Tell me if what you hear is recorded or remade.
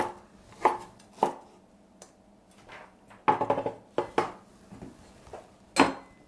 recorded